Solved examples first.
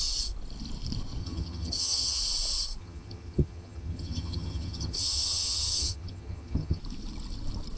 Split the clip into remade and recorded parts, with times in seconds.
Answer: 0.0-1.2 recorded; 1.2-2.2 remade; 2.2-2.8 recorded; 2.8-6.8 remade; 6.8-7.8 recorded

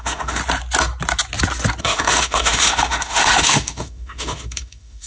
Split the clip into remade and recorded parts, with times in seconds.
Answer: 0.0-0.4 remade; 0.4-1.8 recorded; 1.8-5.1 remade